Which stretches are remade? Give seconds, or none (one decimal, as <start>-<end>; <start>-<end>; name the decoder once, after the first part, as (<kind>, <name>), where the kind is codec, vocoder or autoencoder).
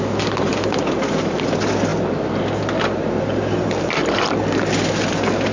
none